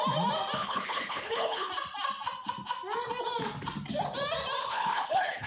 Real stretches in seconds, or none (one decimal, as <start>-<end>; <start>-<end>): 0.0-0.6; 1.7-4.6